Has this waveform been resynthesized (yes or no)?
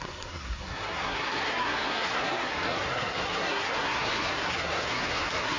yes